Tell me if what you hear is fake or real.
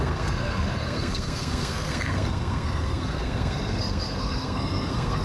fake